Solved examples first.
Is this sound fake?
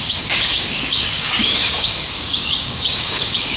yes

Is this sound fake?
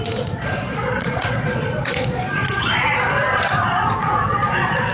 yes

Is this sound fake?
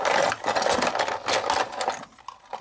no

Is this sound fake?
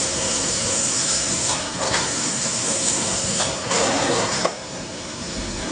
yes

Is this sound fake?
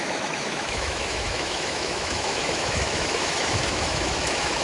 yes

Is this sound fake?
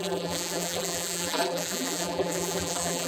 yes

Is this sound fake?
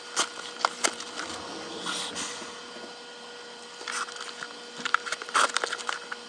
no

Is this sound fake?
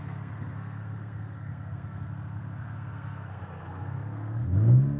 yes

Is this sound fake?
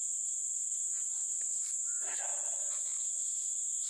no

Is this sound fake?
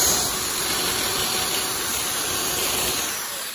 no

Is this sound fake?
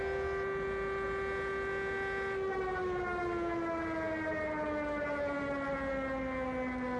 no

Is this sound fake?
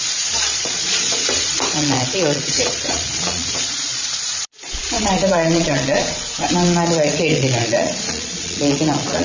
yes